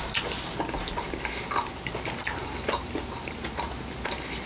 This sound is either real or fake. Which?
real